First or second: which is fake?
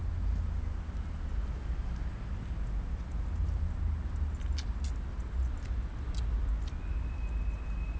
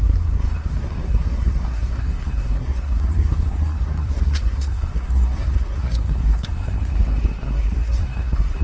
second